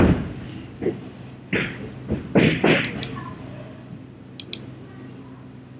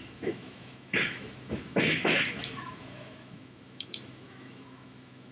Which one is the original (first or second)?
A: first